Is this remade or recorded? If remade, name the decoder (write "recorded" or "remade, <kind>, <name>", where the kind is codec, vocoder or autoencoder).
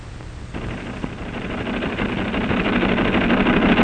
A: recorded